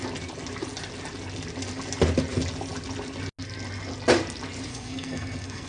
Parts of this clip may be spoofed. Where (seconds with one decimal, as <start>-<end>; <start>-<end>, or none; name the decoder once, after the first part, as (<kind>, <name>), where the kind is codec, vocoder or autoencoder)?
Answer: 4.7-5.7 (codec, SNAC)